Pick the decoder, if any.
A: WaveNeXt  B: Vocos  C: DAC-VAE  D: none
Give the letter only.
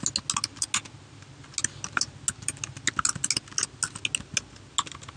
D